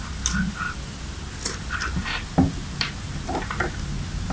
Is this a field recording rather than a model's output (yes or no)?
yes